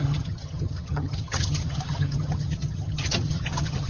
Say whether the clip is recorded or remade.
remade